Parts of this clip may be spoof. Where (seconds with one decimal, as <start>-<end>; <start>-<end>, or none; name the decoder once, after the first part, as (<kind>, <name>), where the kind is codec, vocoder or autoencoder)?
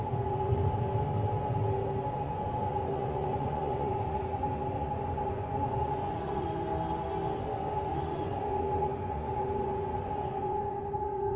0.0-0.6 (vocoder, Vocos); 2.2-6.7; 7.9-11.4